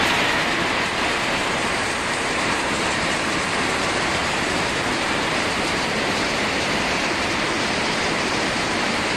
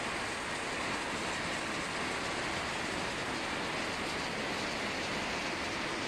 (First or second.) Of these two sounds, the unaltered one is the second